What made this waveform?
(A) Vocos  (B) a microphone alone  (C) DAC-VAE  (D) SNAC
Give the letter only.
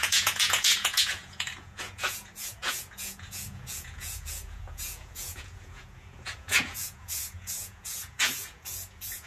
A